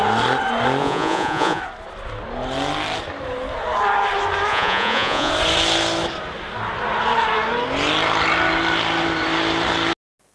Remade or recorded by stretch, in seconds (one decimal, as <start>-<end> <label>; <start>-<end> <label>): 0.0-0.8 recorded; 0.8-1.6 remade; 1.6-4.5 recorded; 4.5-5.3 remade; 5.3-10.3 recorded